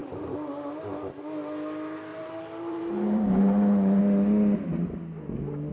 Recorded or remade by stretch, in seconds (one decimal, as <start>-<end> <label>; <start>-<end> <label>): 0.0-0.8 remade; 0.8-2.1 recorded; 2.1-4.0 remade; 4.0-5.7 recorded